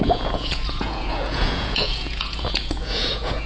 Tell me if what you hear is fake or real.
fake